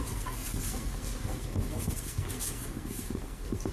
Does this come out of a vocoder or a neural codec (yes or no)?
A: yes